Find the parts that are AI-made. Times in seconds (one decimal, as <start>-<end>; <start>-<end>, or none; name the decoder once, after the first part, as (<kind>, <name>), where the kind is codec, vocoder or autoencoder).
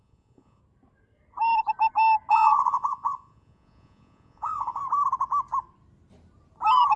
0.0-0.6 (vocoder, Vocos); 2.3-4.8